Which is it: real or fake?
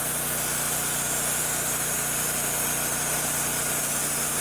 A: real